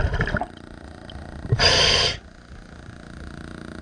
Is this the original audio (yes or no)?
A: yes